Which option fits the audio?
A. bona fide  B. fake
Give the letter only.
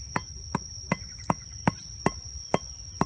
A